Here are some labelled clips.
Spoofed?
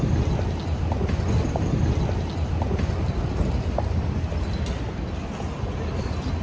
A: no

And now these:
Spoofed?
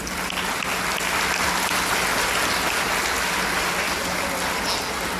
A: no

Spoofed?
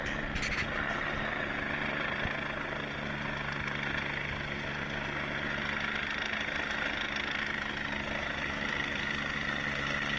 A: no